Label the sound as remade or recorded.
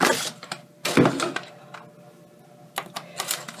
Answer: recorded